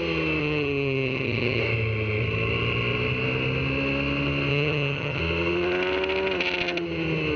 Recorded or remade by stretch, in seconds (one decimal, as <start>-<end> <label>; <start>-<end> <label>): 0.0-0.4 recorded; 0.4-1.6 remade; 1.6-4.5 recorded; 4.5-5.2 remade; 5.2-7.4 recorded